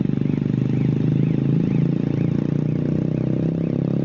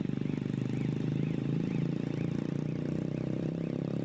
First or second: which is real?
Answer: first